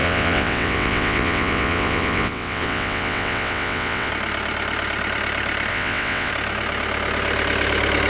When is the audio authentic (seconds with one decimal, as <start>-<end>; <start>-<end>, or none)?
4.1-5.7; 6.3-8.1